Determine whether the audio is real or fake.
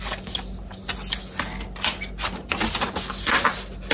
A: real